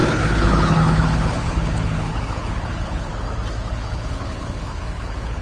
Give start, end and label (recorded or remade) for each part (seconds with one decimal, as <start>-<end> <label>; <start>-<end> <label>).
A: 0.0-3.1 remade; 3.1-3.7 recorded; 3.7-5.4 remade